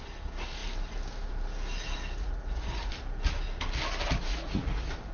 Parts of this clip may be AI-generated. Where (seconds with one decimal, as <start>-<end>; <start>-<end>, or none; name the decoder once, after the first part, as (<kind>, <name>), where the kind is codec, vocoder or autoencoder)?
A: 2.2-2.9 (vocoder, Vocos); 4.3-5.1